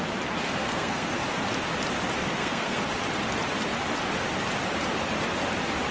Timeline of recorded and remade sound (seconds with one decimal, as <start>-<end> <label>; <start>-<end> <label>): 0.0-0.6 recorded; 0.6-1.2 remade; 1.2-2.2 recorded; 2.2-2.8 remade; 2.8-5.9 recorded